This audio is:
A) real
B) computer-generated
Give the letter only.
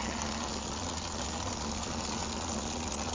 B